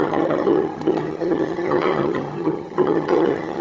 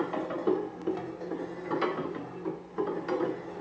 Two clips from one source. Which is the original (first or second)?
second